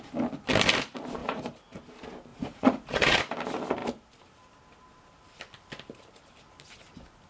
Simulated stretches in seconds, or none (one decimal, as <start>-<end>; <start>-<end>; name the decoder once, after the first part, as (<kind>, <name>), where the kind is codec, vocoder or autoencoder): 1.2-1.8 (vocoder, Vocos); 2.3-3.2